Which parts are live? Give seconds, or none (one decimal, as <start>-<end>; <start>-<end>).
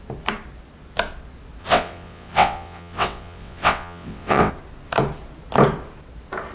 0.0-1.6; 4.5-6.5